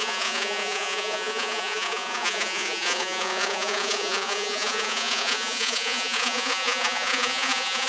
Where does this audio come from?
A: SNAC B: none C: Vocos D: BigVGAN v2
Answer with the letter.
C